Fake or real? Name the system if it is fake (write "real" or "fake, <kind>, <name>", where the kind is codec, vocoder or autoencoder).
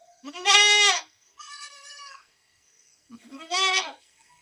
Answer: fake, codec, SNAC